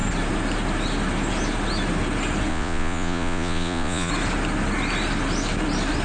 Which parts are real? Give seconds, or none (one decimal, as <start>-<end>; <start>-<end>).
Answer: 0.0-2.5; 4.1-6.0